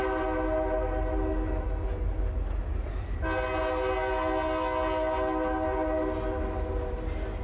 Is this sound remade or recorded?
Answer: recorded